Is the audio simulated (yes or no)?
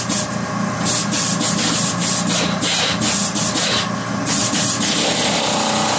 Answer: no